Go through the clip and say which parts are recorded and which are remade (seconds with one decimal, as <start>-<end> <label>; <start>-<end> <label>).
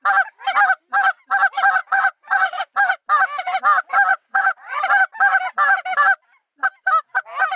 0.0-1.8 recorded; 1.8-2.6 remade; 2.6-4.1 recorded; 4.1-4.8 remade; 4.8-7.6 recorded